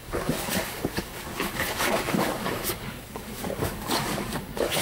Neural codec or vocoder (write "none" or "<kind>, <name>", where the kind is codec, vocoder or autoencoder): codec, DAC